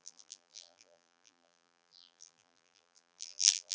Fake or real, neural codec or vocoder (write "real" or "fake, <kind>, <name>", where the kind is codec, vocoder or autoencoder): fake, vocoder, BigVGAN v2